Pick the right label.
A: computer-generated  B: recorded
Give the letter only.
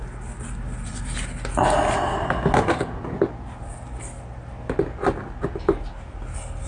B